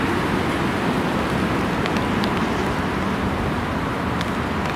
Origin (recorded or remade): recorded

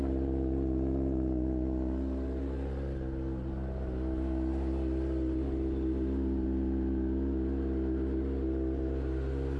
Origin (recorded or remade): recorded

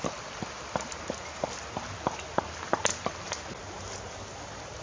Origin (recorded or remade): recorded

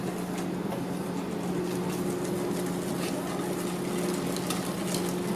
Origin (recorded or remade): recorded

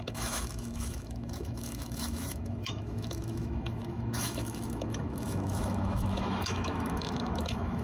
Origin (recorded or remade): remade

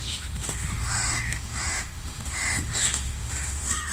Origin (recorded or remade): remade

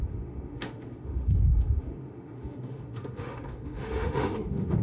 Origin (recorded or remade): remade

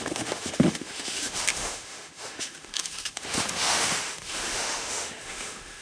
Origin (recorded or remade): remade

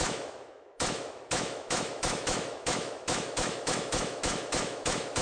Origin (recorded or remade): remade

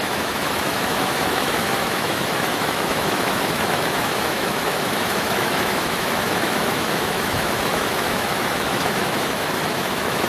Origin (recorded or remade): remade